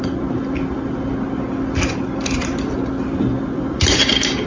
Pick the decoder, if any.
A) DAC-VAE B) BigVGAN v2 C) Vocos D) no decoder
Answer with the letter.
D